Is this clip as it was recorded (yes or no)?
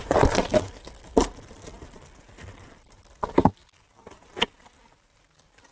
yes